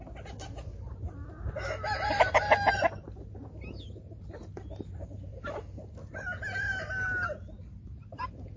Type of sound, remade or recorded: recorded